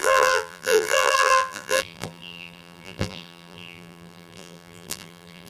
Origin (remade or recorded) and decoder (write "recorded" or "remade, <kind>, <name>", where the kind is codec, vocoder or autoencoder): remade, vocoder, BigVGAN v2